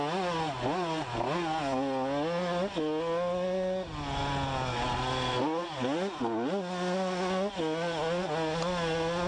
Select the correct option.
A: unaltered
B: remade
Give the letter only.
A